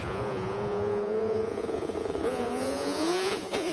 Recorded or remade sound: remade